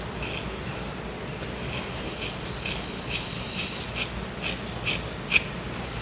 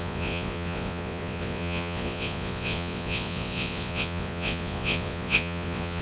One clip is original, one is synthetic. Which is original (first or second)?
first